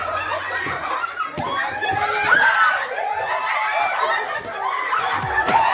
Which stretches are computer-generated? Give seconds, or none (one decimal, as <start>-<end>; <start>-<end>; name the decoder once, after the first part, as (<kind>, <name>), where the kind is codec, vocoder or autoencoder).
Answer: 0.0-0.9 (vocoder, Vocos); 2.7-3.4